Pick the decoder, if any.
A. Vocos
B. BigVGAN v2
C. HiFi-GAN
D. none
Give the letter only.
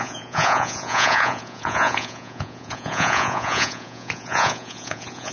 A